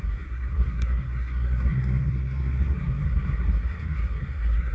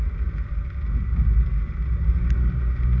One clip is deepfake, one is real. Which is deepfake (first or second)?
first